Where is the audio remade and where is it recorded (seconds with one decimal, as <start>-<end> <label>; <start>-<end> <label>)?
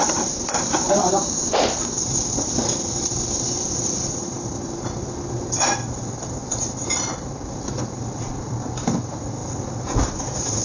0.0-10.6 remade